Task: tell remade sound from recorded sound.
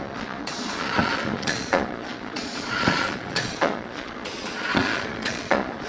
remade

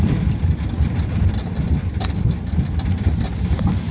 remade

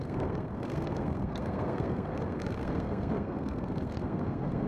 remade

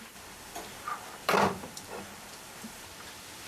remade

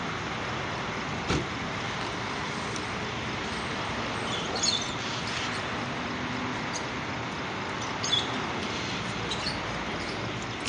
recorded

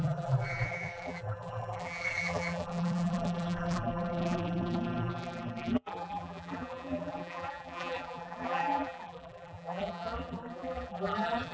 remade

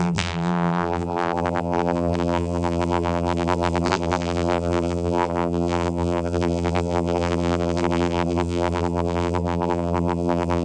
remade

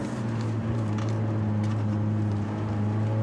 recorded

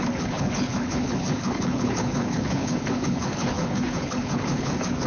remade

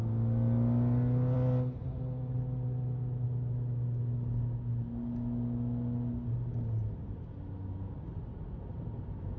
recorded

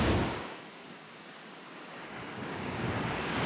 remade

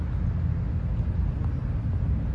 recorded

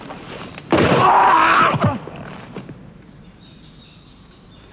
remade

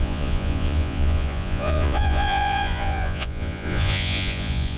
remade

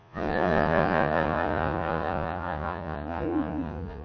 remade